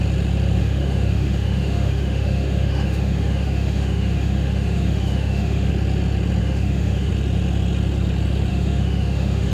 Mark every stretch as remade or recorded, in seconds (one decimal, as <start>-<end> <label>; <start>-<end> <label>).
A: 0.0-0.6 recorded; 0.6-5.7 remade; 5.7-6.4 recorded; 6.4-7.1 remade; 7.1-8.5 recorded; 8.5-9.5 remade